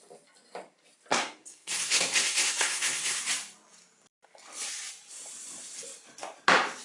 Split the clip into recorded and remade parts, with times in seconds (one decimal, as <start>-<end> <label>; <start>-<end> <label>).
0.0-1.1 recorded; 1.1-3.2 remade; 3.2-6.8 recorded